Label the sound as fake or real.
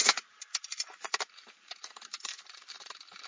fake